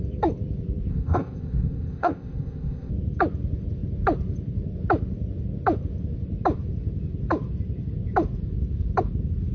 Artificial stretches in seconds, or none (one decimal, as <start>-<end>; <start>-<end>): 0.9-2.9